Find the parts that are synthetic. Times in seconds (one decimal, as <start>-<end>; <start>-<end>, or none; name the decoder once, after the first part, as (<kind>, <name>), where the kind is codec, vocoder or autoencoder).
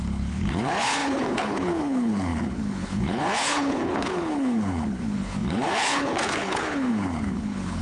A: 0.0-7.8 (codec, HILCodec)